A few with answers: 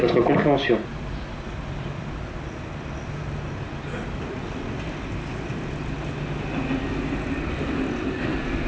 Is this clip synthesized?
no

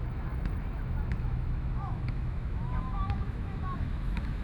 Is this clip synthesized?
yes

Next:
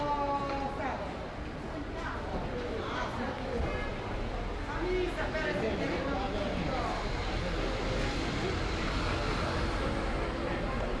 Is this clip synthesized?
no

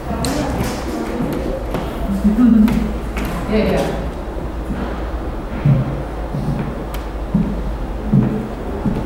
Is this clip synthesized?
no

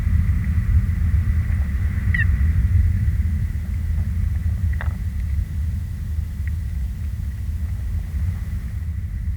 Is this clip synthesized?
no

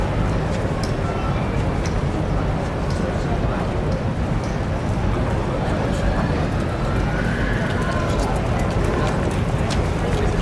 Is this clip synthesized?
no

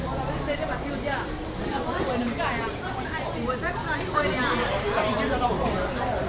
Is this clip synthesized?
no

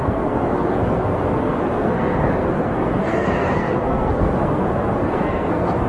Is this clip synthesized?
yes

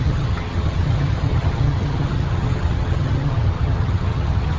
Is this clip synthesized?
yes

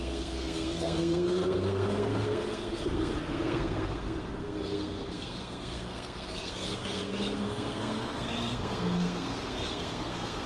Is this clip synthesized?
yes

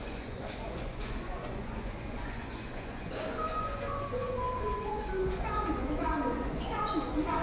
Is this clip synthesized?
yes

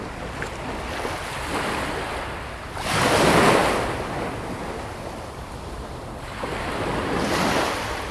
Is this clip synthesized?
no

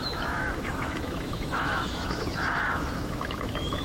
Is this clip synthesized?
yes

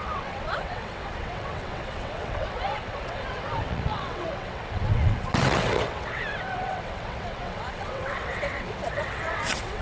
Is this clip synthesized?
yes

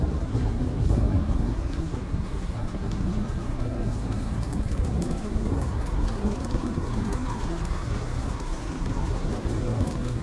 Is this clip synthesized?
yes